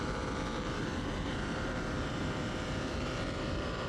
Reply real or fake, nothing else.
fake